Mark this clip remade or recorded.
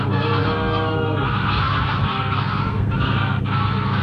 remade